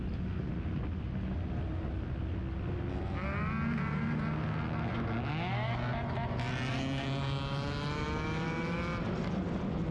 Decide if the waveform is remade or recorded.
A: recorded